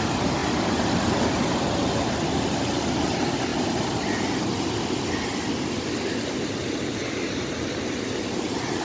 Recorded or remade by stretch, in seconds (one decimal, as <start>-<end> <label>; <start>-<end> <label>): 0.0-8.8 recorded